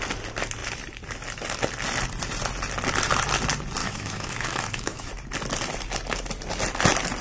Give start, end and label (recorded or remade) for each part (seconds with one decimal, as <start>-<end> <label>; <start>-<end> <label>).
0.0-3.8 recorded; 3.8-5.1 remade; 5.1-7.2 recorded